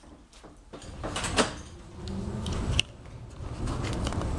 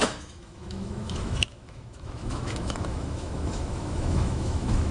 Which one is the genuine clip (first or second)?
first